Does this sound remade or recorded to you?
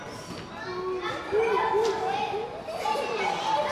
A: recorded